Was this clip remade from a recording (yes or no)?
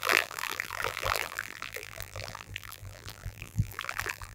yes